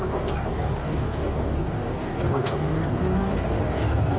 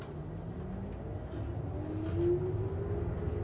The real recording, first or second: second